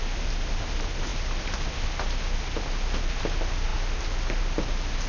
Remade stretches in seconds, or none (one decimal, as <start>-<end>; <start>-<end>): none